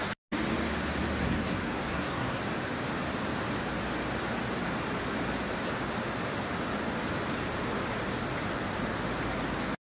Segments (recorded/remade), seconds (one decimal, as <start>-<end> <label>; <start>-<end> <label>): 0.0-1.2 recorded; 1.2-2.4 remade; 2.4-9.9 recorded